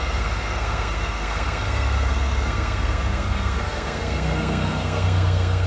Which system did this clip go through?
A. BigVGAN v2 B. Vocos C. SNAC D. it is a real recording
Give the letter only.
C